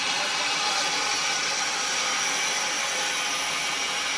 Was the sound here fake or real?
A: real